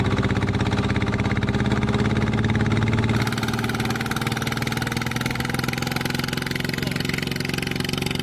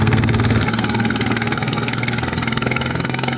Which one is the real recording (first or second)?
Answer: first